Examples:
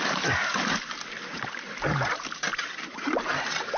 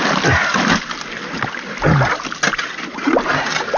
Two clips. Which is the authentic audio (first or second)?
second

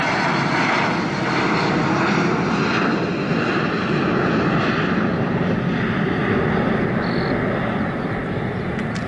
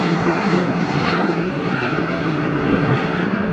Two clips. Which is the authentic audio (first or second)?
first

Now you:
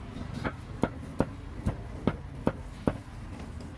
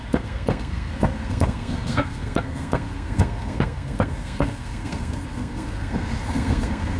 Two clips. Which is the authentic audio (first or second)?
first